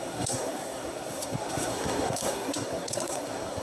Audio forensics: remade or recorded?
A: remade